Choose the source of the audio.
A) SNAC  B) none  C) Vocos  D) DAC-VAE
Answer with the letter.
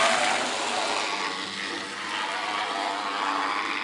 B